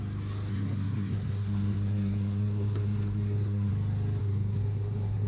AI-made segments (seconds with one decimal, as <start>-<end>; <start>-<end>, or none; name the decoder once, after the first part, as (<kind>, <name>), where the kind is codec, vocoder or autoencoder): 0.5-3.7 (codec, SNAC); 4.2-5.3